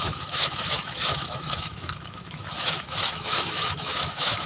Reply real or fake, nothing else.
fake